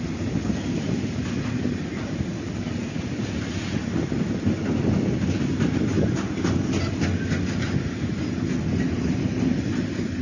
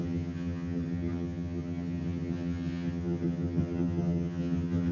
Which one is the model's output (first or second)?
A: second